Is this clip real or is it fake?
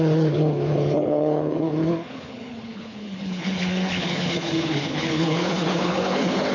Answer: fake